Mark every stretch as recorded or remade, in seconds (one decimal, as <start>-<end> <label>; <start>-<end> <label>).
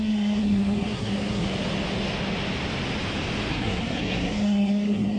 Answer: 0.0-1.5 remade; 1.5-3.5 recorded; 3.5-5.2 remade